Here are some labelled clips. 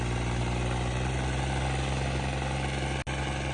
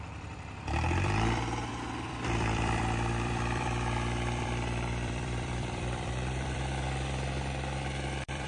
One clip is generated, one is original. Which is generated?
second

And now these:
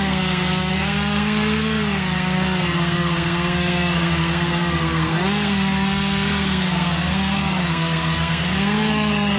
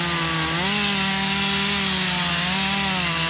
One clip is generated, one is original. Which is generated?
first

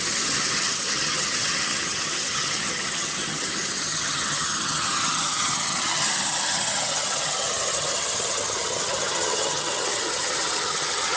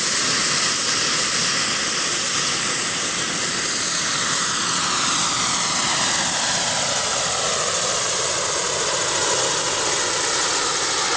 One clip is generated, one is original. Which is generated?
first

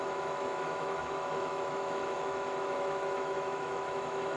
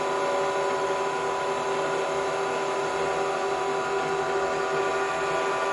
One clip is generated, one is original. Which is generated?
first